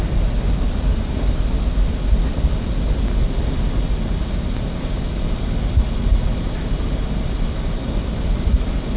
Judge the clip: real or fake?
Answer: real